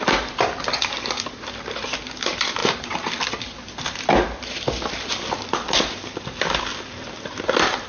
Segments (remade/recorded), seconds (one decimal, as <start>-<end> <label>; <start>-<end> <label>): 0.0-7.9 recorded